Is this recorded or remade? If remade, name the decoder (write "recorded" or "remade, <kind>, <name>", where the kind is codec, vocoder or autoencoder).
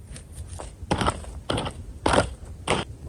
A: remade, vocoder, BigVGAN v2